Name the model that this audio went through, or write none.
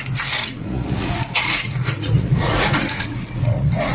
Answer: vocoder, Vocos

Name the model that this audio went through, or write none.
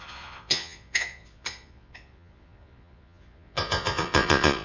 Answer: vocoder, Vocos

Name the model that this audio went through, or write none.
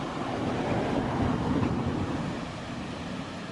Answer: none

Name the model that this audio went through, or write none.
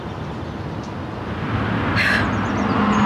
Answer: none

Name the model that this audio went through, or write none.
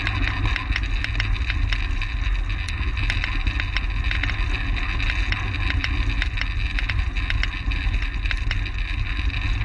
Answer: none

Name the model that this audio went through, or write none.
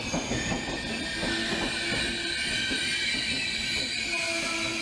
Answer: none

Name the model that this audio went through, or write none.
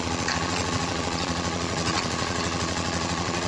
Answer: vocoder, Vocos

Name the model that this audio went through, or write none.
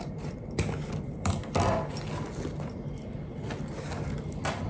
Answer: none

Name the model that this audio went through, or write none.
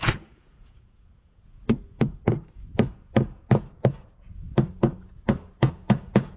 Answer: vocoder, Vocos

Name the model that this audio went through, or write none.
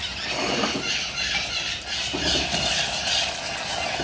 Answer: none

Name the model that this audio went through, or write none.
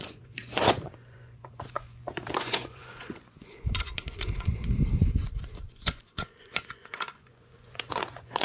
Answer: vocoder, Vocos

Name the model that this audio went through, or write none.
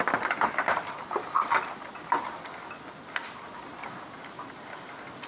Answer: none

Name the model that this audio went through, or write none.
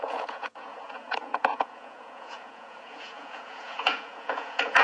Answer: vocoder, Vocos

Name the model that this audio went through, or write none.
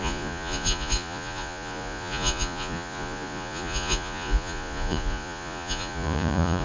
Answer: vocoder, Vocos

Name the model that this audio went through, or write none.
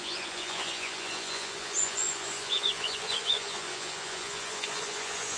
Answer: vocoder, Vocos